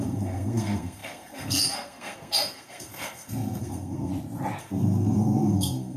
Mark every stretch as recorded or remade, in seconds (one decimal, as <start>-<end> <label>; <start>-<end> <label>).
0.0-4.1 remade; 4.1-4.6 recorded; 4.6-6.0 remade